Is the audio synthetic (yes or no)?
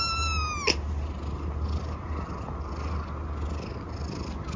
no